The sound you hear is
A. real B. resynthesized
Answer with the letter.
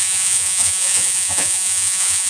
B